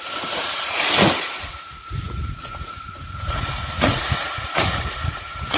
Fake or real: fake